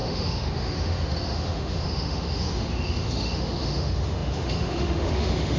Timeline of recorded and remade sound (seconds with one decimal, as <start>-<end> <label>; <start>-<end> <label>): 0.0-5.6 remade